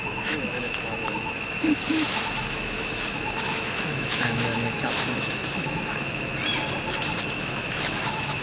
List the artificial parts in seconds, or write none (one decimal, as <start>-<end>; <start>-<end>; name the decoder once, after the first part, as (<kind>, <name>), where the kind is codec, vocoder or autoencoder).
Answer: 0.0-6.3 (autoencoder, DAC-VAE); 7.3-8.4